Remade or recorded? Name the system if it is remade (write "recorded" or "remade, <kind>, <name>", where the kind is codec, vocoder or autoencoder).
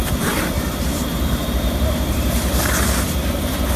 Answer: remade, vocoder, BigVGAN v2